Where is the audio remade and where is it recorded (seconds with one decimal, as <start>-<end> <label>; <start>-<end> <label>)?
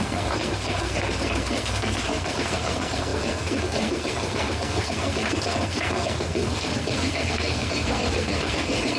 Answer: 0.0-9.0 remade